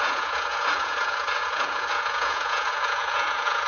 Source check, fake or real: fake